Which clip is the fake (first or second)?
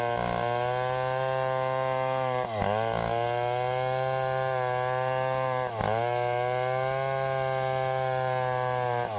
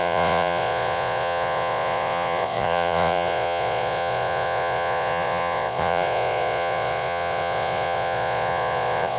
second